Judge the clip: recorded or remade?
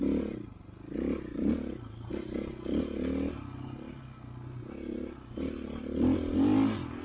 recorded